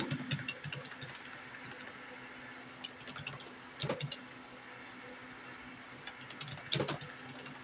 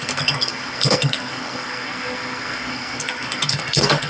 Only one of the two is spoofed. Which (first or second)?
second